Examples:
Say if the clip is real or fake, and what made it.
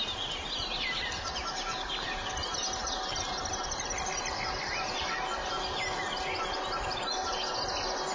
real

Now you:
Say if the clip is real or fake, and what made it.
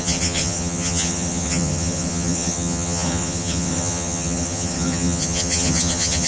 fake, vocoder, HiFi-GAN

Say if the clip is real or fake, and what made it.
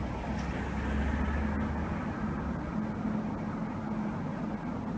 real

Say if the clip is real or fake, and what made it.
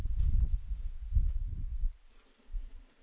real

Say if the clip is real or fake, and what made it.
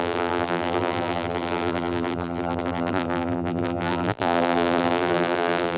fake, vocoder, BigVGAN v2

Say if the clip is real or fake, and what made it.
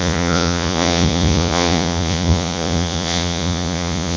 fake, vocoder, Vocos